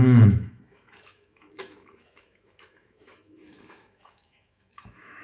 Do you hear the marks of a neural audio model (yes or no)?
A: yes